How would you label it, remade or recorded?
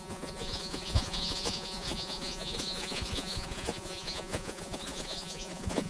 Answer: remade